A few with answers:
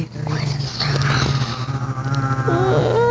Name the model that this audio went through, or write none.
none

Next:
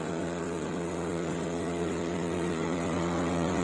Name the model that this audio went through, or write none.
vocoder, WaveNeXt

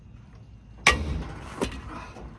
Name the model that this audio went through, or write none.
none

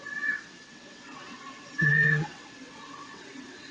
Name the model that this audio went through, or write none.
vocoder, WaveNeXt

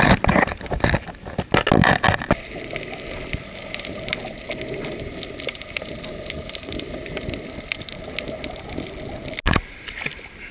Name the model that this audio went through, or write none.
none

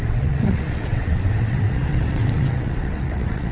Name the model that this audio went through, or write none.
vocoder, WaveNeXt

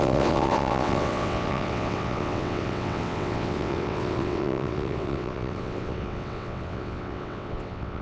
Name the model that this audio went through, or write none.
vocoder, WaveNeXt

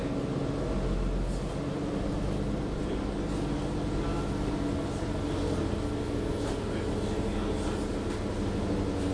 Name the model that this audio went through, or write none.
none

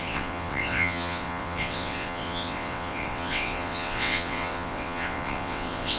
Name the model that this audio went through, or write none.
vocoder, WaveNeXt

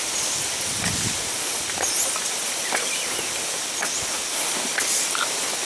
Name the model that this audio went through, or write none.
none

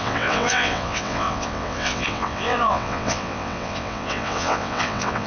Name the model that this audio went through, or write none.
vocoder, WaveNeXt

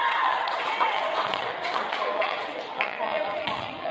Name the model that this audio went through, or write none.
vocoder, WaveNeXt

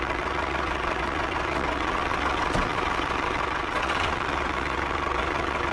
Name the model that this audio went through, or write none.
vocoder, WaveNeXt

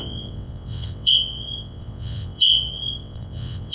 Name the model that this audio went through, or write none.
vocoder, WaveNeXt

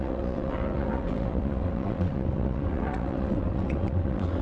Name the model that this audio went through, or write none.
vocoder, WaveNeXt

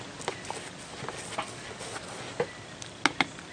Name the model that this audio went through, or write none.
none